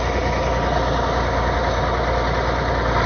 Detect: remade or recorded recorded